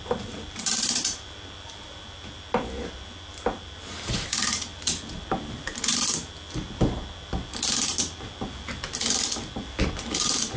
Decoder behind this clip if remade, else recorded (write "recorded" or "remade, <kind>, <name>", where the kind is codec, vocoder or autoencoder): recorded